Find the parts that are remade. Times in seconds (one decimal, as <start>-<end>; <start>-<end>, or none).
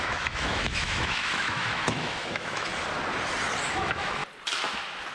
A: 0.0-2.7; 3.7-4.2